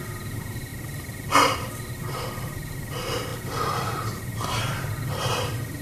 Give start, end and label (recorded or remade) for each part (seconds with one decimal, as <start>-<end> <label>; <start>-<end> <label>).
0.0-5.8 remade